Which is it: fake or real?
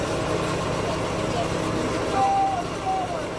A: real